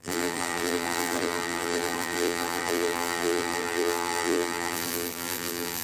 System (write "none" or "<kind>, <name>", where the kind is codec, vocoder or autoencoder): vocoder, BigVGAN v2